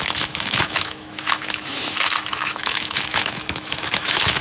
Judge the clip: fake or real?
fake